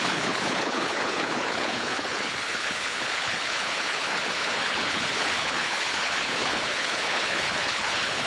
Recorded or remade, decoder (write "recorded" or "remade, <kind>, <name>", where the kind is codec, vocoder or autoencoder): remade, codec, HILCodec